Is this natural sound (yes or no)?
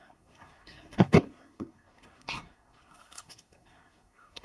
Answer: no